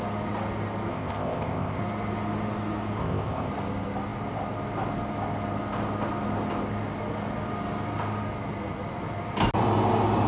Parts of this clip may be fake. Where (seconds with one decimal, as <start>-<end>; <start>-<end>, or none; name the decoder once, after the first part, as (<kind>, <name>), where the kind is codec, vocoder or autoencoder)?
0.9-1.8 (codec, ZipCodec); 3.0-3.5